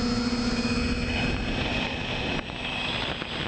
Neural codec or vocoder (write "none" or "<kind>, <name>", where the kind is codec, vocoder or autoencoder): none